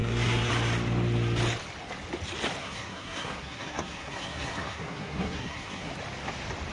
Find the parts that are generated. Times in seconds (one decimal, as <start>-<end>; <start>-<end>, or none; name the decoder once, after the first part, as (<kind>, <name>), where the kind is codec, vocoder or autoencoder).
0.0-0.5 (codec, SNAC); 2.6-5.9